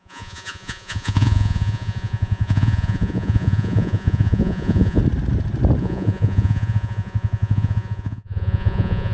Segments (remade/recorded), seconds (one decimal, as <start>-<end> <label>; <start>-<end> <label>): 0.0-5.0 remade; 5.0-5.8 recorded; 5.8-9.1 remade